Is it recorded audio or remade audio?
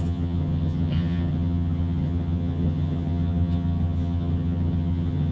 remade